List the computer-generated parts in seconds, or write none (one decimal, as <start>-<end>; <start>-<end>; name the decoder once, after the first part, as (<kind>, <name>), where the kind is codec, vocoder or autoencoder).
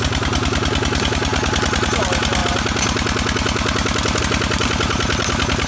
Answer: none